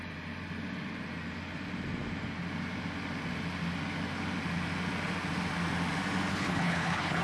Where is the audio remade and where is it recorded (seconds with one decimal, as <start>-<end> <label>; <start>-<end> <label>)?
0.0-6.3 recorded; 6.3-7.2 remade